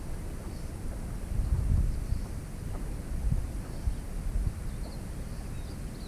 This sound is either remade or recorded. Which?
recorded